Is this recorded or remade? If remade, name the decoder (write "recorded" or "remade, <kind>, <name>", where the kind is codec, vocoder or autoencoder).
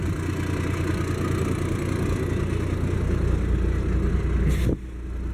recorded